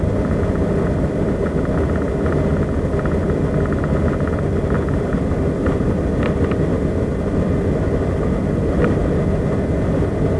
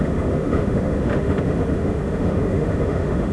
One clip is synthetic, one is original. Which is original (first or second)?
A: first